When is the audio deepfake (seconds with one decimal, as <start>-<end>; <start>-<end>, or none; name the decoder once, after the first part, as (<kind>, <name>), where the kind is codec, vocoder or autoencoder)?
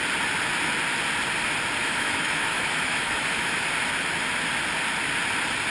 1.8-3.6 (autoencoder, DAC-VAE)